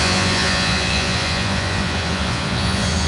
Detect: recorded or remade remade